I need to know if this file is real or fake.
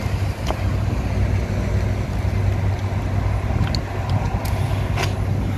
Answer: real